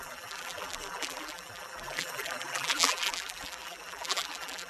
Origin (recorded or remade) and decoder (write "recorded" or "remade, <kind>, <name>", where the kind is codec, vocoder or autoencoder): remade, vocoder, BigVGAN v2